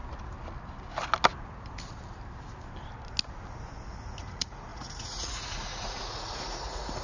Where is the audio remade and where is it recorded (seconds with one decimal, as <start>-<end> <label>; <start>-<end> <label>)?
0.0-4.2 recorded; 4.2-7.0 remade